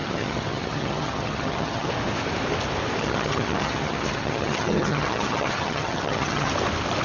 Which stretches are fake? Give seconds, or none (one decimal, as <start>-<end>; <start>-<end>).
0.0-1.9; 3.0-6.5